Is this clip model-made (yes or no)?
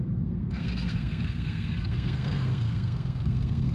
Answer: yes